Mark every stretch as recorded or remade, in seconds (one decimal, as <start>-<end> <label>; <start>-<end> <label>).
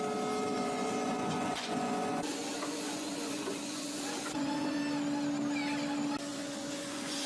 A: 0.0-0.5 recorded; 0.5-4.8 remade; 4.8-6.3 recorded; 6.3-7.3 remade